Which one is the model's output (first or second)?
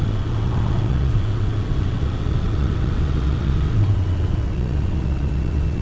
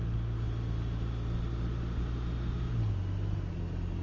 first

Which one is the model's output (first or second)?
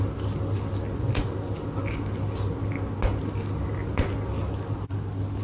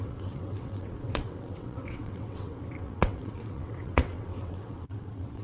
second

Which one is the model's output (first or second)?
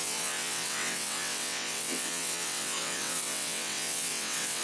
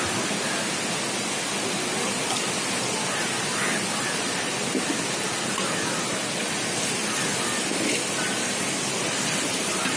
first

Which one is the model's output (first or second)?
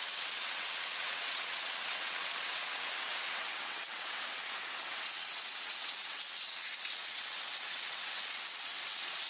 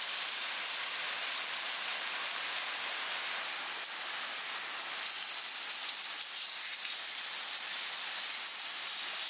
first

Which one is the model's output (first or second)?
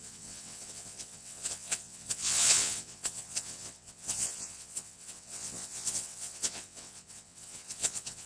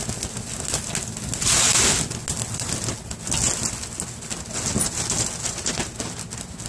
first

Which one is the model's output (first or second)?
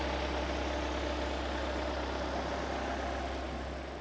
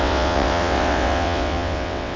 second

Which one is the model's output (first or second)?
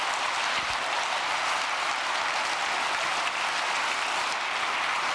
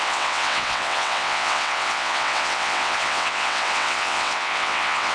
second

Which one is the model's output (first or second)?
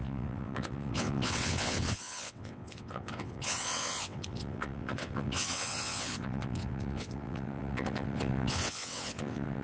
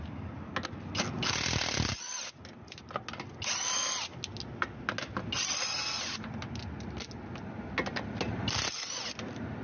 first